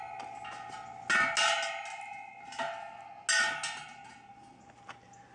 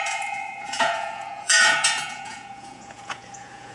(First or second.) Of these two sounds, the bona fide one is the first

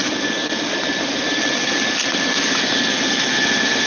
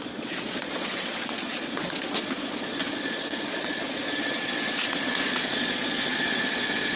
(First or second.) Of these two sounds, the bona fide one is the first